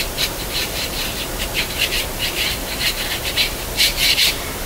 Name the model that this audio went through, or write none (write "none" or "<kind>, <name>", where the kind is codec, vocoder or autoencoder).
vocoder, BigVGAN v2